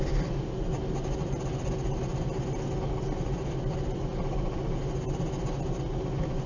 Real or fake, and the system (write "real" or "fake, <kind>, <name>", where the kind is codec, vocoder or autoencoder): real